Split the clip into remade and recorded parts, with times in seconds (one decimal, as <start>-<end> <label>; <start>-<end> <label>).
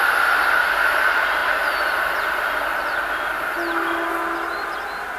0.0-5.2 recorded